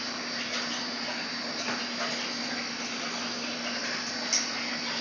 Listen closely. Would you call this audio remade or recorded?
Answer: recorded